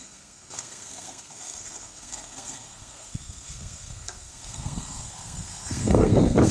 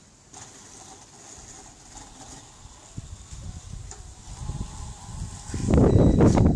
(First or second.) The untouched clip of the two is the second